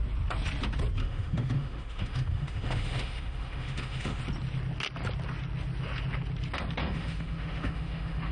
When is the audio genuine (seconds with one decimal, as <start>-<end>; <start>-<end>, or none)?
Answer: 0.0-1.0; 4.2-6.8